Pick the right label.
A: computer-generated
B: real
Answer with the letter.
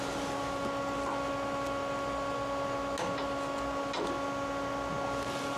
B